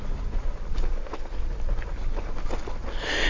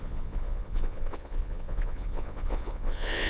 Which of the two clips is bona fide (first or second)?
first